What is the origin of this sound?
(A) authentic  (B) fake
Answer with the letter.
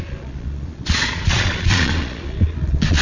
B